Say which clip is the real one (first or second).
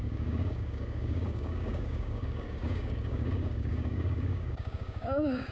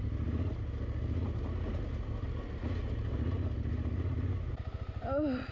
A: second